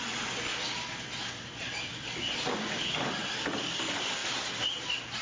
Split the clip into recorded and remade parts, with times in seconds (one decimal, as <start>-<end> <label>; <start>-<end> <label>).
0.0-0.5 recorded; 0.5-3.2 remade; 3.2-4.2 recorded; 4.2-4.8 remade; 4.8-5.2 recorded